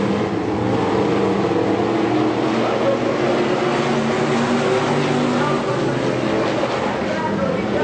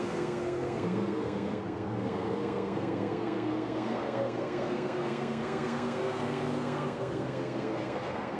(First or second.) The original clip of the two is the first